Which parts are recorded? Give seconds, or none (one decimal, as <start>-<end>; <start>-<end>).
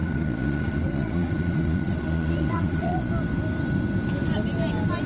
3.1-5.1